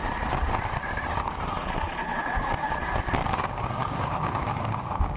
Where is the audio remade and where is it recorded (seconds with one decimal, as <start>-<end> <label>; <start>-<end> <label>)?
0.0-3.2 recorded; 3.2-5.2 remade